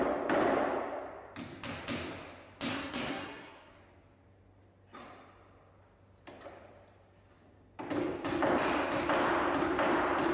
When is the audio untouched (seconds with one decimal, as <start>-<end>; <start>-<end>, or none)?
0.0-2.7; 3.8-10.3